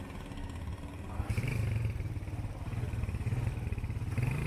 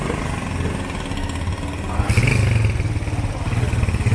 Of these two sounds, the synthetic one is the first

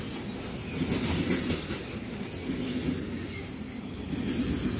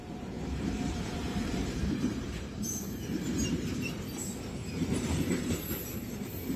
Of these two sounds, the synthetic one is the second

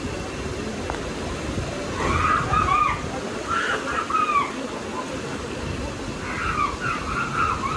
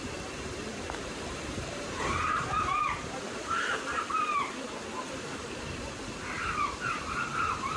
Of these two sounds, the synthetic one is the second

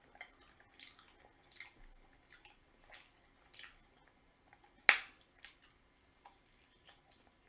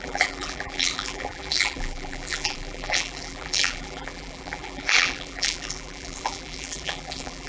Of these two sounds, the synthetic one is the second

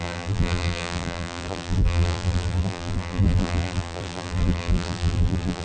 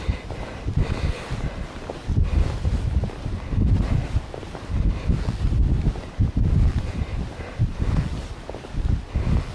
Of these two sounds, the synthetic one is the first